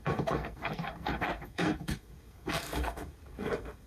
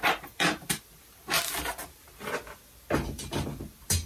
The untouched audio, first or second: second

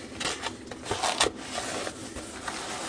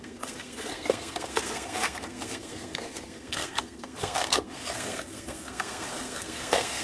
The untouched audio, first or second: first